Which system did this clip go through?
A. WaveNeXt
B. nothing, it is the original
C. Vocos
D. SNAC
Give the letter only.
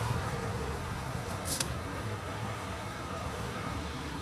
D